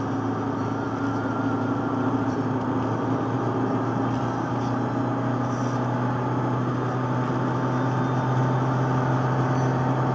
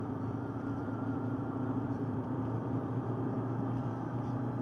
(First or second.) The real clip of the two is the first